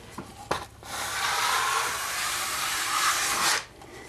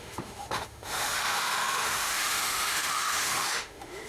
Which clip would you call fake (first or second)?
second